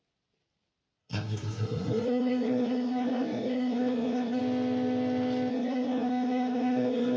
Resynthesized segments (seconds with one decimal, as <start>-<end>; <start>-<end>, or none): 1.0-4.4; 5.5-7.2